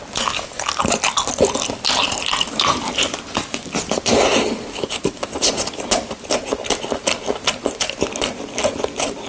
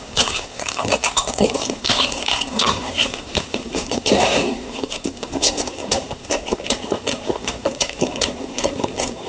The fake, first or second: second